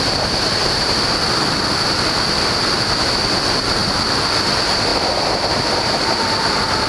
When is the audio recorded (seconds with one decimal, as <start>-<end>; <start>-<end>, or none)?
0.0-6.9